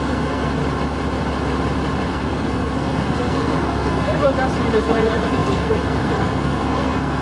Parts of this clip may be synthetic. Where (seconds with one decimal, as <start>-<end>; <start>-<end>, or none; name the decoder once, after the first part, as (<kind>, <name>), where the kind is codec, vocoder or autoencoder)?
0.0-0.6 (codec, SNAC); 2.1-4.3; 4.8-7.2